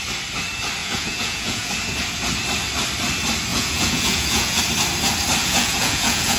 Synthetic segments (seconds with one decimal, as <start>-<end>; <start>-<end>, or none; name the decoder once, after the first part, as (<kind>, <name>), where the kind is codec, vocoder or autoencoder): 0.8-1.7 (vocoder, Vocos); 3.5-4.6; 5.4-6.4